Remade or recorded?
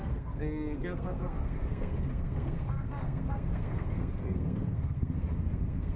remade